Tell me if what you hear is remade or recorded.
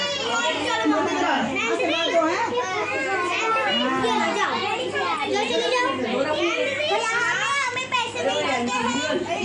recorded